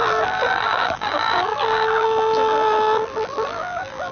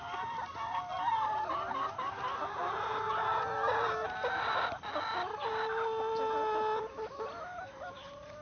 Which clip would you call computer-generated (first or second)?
first